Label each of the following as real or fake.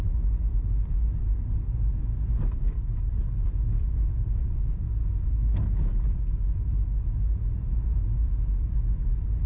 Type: real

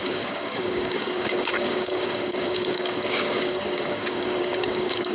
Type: fake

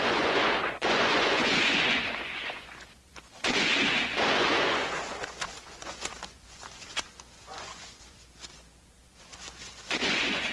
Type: fake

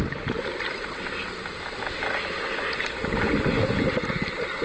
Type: real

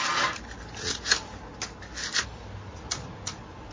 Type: real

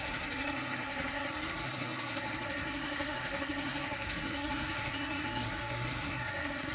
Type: fake